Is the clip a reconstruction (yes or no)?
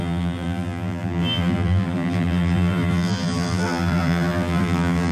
yes